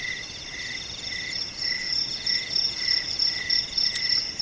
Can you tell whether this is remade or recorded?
recorded